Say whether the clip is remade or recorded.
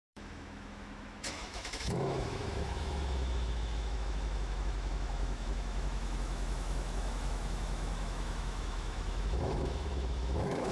remade